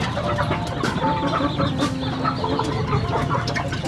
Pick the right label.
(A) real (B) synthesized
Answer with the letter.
A